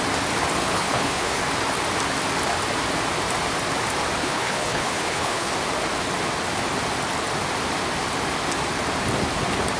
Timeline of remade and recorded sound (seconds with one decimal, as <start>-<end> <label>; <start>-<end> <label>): 0.0-0.6 recorded; 0.6-1.4 remade; 1.4-4.2 recorded; 4.2-5.5 remade; 5.5-9.8 recorded

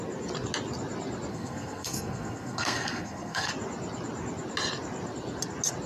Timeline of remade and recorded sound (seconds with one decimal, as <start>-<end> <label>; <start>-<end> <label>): 0.0-1.3 recorded; 1.3-3.5 remade; 3.5-5.9 recorded